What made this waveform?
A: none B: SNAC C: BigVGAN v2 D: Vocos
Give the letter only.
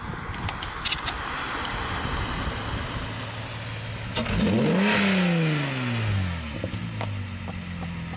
A